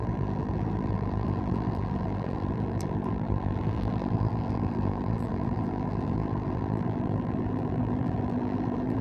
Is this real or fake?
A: fake